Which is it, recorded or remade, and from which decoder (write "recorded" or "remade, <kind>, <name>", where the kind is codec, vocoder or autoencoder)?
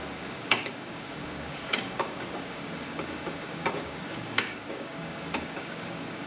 remade, codec, DAC